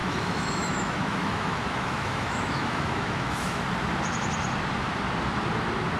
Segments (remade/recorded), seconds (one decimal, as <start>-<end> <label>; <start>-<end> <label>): 0.0-3.6 remade; 3.6-6.0 recorded